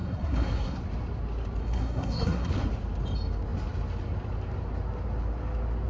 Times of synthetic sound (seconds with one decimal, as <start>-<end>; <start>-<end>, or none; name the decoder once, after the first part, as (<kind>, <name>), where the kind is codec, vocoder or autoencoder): 0.0-0.8 (codec, SNAC); 1.6-2.5